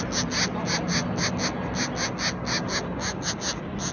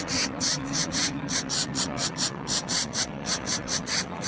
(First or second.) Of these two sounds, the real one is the first